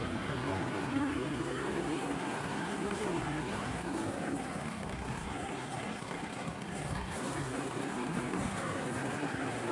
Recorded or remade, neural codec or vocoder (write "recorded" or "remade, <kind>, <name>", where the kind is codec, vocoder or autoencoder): remade, codec, SNAC